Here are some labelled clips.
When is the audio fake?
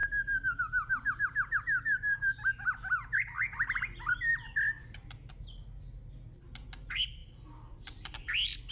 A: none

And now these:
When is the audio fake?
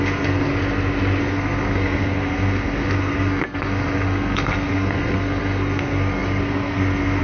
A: 0.0-0.5 (codec, SNAC); 1.2-7.2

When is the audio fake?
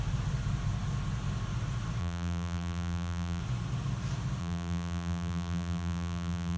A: 2.0-3.4 (vocoder, BigVGAN v2); 4.4-6.6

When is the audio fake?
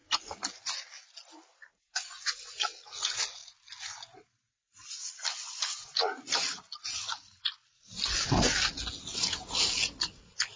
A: none